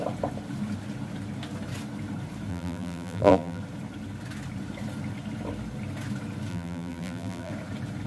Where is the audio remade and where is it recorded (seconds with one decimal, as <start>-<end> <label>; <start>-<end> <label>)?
0.0-2.5 recorded; 2.5-3.6 remade; 3.6-6.5 recorded; 6.5-7.5 remade; 7.5-8.1 recorded